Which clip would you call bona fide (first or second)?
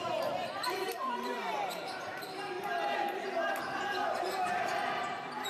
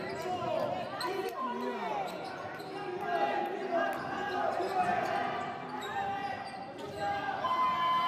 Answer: second